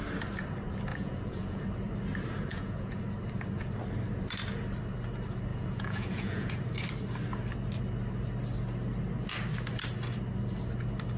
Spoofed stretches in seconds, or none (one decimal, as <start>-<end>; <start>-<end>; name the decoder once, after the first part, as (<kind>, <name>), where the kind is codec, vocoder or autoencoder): 0.9-1.6 (vocoder, Vocos); 2.5-3.0; 5.5-6.6